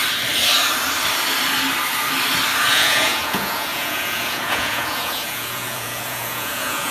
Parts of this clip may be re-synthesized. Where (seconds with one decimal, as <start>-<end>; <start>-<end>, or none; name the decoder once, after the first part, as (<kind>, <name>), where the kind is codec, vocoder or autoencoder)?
2.7-6.9 (vocoder, Vocos)